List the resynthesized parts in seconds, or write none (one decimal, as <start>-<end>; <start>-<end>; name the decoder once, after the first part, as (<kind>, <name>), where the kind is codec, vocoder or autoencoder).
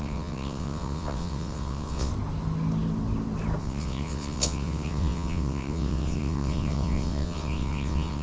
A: 0.0-2.1 (vocoder, WaveNeXt); 3.6-8.2